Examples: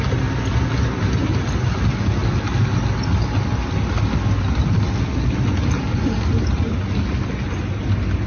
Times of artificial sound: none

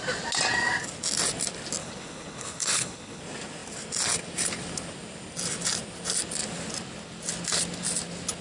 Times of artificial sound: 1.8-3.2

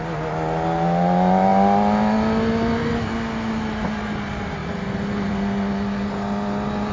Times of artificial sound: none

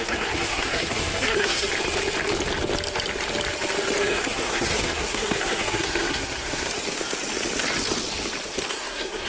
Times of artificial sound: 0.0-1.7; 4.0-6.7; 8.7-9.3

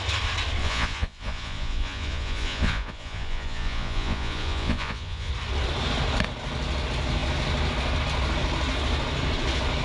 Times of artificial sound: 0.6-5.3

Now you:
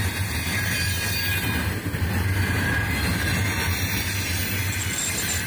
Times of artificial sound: none

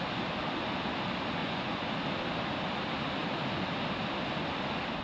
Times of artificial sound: 1.4-1.9